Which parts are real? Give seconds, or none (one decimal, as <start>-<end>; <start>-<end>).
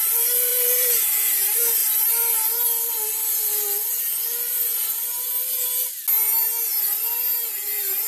1.8-2.9; 4.7-7.5